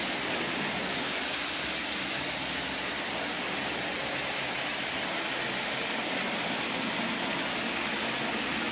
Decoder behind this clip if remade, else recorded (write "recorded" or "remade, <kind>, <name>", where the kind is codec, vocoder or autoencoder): recorded